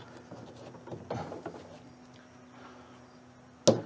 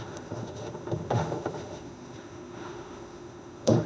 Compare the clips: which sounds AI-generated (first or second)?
second